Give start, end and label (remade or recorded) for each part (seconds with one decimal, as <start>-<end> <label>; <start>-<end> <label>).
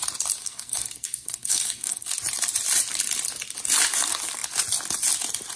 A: 0.0-0.4 recorded; 0.4-2.1 remade; 2.1-5.6 recorded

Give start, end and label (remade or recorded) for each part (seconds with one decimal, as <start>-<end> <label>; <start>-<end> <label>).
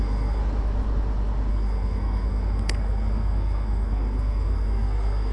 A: 0.0-0.4 remade; 0.4-1.5 recorded; 1.5-5.3 remade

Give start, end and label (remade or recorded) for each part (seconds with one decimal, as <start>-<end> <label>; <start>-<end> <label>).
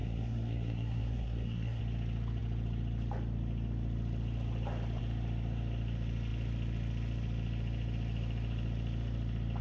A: 0.0-1.8 remade; 1.8-9.6 recorded